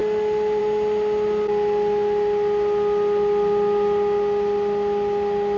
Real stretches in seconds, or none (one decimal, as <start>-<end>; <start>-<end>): 0.0-5.6